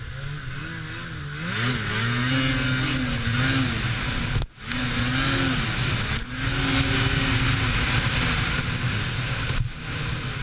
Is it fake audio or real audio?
real